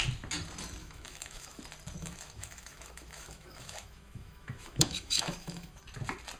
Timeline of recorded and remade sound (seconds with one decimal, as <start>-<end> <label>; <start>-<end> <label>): 0.0-0.8 recorded; 0.8-1.6 remade; 1.6-2.0 recorded; 2.0-5.8 remade; 5.8-6.4 recorded